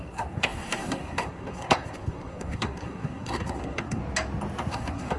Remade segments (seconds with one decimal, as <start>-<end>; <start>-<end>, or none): 0.0-4.0; 4.7-5.2